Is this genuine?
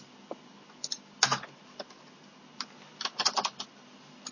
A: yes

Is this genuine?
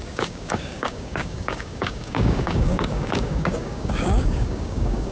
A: no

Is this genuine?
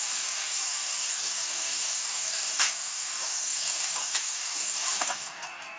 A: no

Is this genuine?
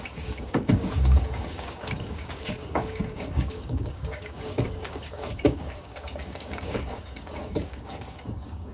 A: no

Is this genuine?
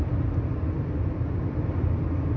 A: yes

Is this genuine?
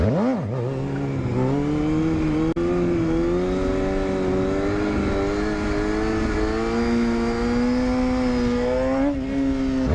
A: yes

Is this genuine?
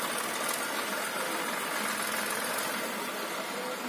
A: yes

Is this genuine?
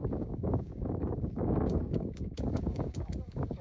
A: no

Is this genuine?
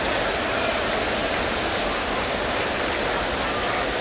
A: yes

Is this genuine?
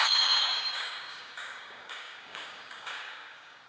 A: no